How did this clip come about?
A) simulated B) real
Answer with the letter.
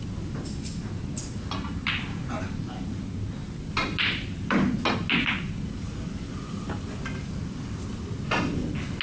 B